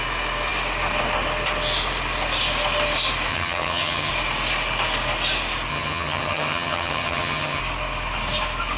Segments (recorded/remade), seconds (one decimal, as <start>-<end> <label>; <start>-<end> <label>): 0.0-3.3 recorded; 3.3-4.1 remade; 4.1-5.7 recorded; 5.7-7.6 remade; 7.6-8.8 recorded